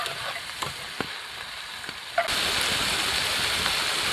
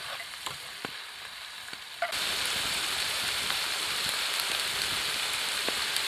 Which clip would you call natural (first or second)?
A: first